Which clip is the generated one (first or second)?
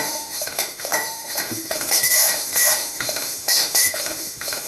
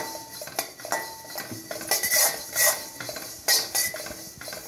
first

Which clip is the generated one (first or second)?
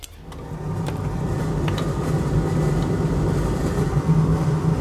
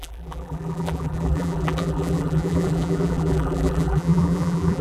second